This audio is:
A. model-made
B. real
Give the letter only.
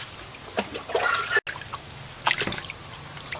B